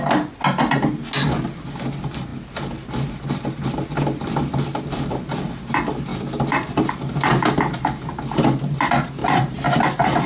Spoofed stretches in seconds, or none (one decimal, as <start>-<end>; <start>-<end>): 6.1-6.9; 9.2-9.8